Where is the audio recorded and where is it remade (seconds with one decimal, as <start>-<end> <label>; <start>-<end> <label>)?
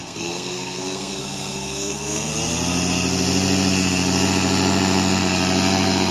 0.0-2.3 remade; 2.3-6.1 recorded